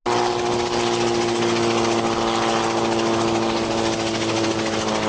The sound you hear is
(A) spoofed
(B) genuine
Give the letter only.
B